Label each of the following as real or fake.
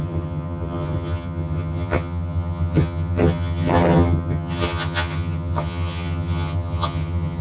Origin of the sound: fake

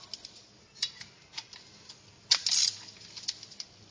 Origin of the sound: real